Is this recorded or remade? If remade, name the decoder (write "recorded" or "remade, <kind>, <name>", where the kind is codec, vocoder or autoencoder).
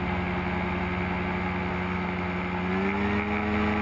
recorded